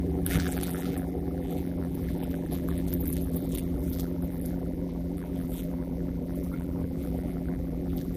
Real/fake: fake